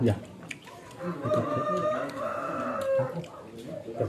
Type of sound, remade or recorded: recorded